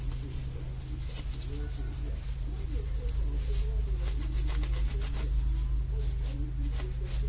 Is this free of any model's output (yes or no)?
yes